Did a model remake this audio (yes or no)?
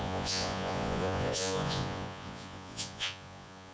yes